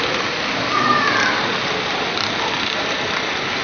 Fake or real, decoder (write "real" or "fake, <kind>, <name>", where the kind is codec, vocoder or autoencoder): real